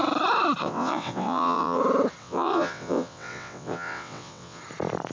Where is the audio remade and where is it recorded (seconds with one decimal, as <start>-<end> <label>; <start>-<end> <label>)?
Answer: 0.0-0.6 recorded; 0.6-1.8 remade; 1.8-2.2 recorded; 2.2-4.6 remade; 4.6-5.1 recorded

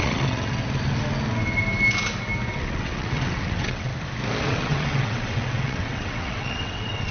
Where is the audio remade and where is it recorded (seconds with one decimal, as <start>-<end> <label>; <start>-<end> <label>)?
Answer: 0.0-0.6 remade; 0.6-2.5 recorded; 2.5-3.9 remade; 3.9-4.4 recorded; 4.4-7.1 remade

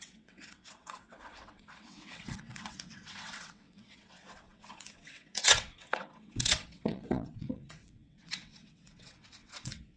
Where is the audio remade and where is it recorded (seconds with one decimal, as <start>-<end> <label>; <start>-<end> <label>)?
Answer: 0.0-10.0 remade

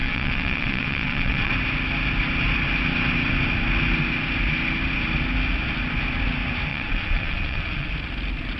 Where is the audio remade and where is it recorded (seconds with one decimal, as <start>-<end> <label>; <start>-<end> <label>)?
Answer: 0.0-1.5 remade; 1.5-6.7 recorded; 6.7-7.9 remade; 7.9-8.6 recorded